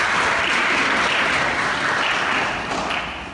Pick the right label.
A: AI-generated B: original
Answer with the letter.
B